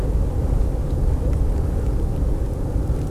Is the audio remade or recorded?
recorded